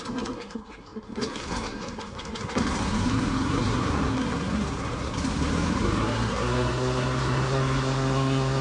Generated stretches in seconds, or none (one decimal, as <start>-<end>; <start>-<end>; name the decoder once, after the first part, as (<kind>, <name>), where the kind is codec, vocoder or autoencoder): 0.0-8.6 (codec, SNAC)